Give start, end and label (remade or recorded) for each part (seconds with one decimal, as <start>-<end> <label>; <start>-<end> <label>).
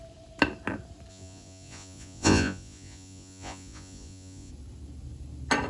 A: 0.0-1.1 recorded; 1.1-4.5 remade; 4.5-5.7 recorded